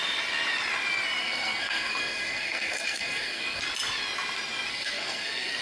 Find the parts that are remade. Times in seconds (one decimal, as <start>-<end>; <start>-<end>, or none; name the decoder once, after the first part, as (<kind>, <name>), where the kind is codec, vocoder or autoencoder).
1.2-3.6 (codec, SNAC); 4.7-5.6

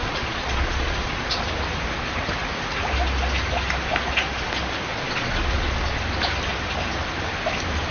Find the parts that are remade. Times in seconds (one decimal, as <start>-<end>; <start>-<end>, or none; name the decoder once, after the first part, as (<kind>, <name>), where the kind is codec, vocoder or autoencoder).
0.0-1.4 (vocoder, Vocos); 4.9-6.0